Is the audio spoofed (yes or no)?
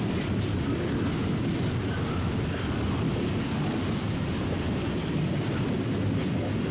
no